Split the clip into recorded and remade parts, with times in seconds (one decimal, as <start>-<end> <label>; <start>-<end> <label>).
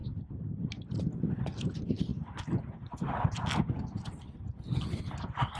0.0-0.7 remade; 0.7-5.6 recorded